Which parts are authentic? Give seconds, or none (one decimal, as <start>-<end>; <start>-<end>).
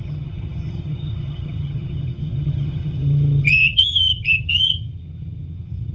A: none